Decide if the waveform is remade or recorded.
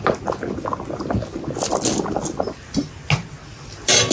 recorded